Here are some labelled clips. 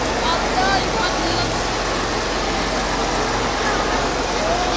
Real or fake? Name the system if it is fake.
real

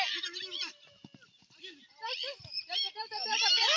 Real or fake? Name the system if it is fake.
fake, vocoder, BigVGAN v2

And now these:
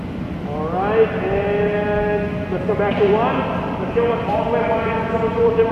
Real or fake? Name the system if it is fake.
real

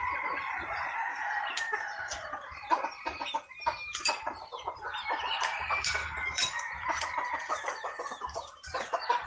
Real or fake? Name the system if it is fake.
fake, vocoder, BigVGAN v2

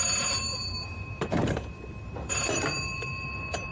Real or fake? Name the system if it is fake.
fake, vocoder, BigVGAN v2